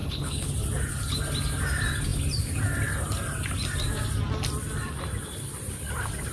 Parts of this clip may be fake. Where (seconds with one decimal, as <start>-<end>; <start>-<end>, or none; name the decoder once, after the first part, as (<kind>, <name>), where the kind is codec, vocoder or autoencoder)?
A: 0.0-0.5 (codec, HILCodec)